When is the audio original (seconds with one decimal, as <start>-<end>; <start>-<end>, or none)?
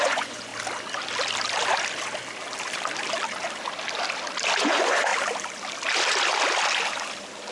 0.5-4.6; 5.1-7.5